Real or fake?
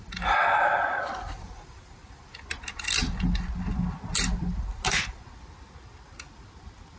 real